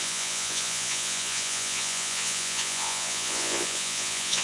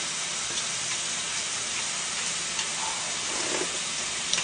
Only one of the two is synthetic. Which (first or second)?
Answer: first